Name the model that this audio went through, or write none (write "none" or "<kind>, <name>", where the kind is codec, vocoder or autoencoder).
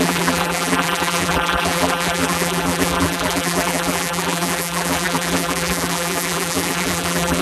vocoder, BigVGAN v2